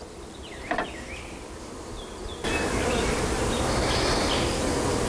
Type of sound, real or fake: fake